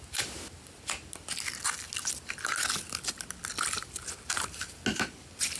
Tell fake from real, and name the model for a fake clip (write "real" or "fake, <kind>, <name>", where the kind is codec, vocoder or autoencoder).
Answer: real